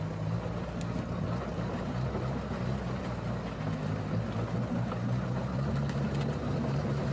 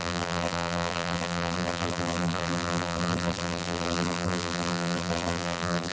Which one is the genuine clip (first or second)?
first